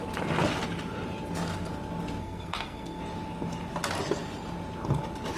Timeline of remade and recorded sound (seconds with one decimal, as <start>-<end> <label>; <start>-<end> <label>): 0.0-2.2 recorded; 2.2-3.0 remade; 3.0-5.4 recorded